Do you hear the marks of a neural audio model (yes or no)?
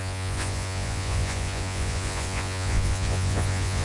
yes